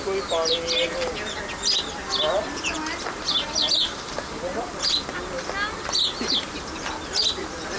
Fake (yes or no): no